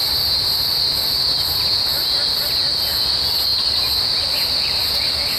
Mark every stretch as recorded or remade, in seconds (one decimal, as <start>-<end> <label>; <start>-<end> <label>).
0.0-5.4 recorded